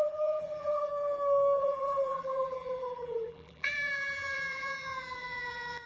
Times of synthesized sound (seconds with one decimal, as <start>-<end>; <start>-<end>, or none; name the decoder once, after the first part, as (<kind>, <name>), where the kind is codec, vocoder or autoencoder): 0.0-0.9 (vocoder, BigVGAN v2); 1.6-5.9